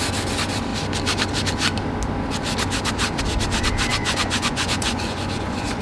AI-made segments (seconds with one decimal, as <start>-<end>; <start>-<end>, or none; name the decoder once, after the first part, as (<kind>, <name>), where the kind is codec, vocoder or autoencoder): 3.9-5.8 (vocoder, Vocos)